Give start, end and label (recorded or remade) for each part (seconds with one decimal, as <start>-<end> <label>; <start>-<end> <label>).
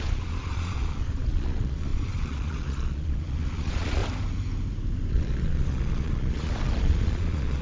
0.0-4.0 remade; 4.0-5.1 recorded; 5.1-7.6 remade